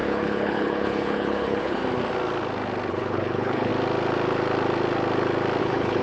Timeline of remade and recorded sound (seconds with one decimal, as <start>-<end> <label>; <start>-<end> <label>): 0.0-1.8 remade; 1.8-2.9 recorded; 2.9-3.7 remade; 3.7-5.6 recorded; 5.6-6.0 remade